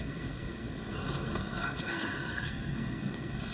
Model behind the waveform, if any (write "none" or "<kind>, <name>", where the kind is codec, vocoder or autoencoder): codec, SNAC